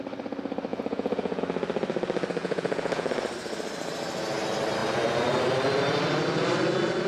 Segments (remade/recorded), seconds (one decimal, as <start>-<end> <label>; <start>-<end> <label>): 0.0-0.7 recorded; 0.7-1.4 remade; 1.4-2.4 recorded; 2.4-3.1 remade; 3.1-7.1 recorded